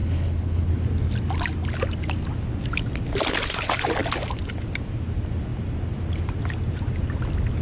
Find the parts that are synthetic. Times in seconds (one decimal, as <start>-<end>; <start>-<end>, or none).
0.0-0.7